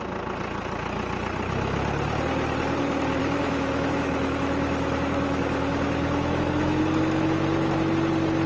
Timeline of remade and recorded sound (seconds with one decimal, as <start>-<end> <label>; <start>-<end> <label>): 0.0-3.2 recorded; 3.2-6.8 remade; 6.8-8.5 recorded